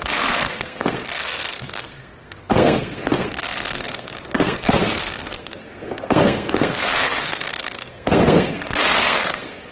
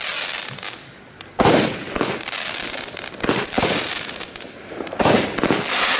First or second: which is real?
second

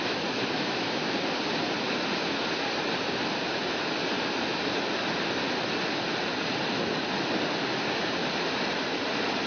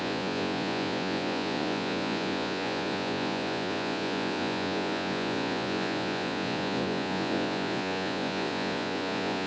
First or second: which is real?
first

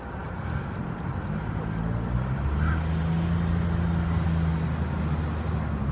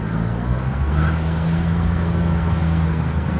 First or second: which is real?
first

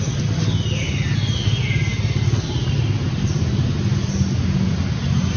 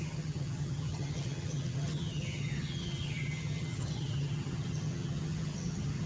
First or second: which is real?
first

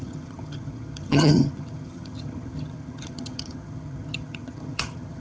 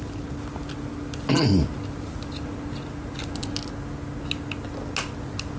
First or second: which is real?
second